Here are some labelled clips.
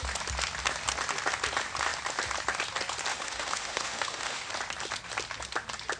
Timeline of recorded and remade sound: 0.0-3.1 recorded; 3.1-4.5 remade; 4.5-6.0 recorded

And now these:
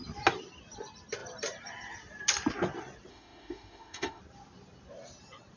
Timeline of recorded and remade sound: 0.0-3.1 recorded; 3.1-4.2 remade; 4.2-5.6 recorded

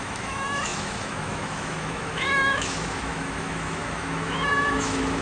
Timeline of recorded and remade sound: 0.0-5.2 remade

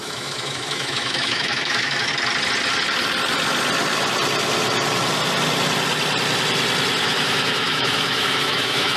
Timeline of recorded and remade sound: 0.0-2.1 remade; 2.1-7.0 recorded; 7.0-9.0 remade

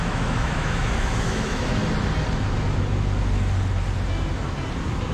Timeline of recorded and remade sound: 0.0-1.8 remade; 1.8-5.1 recorded